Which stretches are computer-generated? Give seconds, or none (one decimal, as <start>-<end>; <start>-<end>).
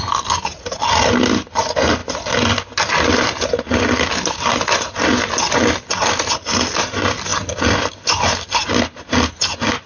none